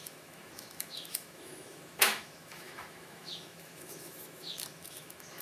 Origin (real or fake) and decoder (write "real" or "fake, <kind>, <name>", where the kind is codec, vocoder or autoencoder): fake, autoencoder, DAC-VAE